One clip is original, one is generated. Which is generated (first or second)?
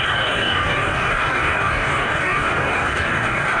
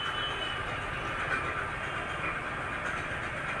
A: first